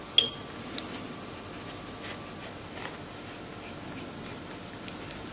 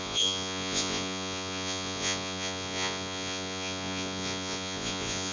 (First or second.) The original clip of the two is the first